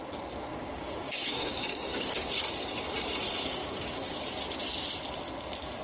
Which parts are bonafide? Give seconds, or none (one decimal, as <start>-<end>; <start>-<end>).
0.0-0.5; 2.3-3.6; 4.3-5.8

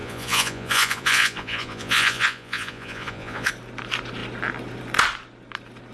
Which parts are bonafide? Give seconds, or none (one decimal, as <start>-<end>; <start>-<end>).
3.5-5.9

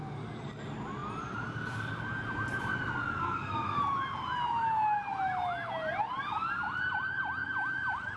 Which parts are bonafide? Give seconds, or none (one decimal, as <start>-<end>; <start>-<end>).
0.0-3.2; 3.8-8.2

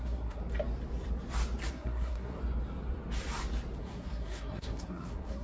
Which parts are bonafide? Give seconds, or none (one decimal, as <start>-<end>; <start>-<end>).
0.4-1.7; 2.4-3.8

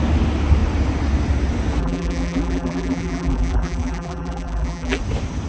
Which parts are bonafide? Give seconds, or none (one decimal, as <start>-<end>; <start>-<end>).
0.0-1.8; 5.0-5.5

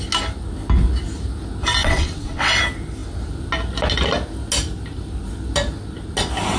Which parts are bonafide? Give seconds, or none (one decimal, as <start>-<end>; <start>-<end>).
0.0-1.8; 2.5-6.6

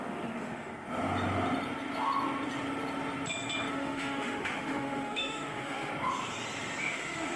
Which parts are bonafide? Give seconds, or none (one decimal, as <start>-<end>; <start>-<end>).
0.7-3.7; 5.9-6.8